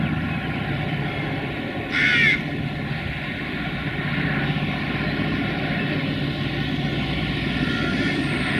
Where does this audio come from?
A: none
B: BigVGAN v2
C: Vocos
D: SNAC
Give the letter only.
A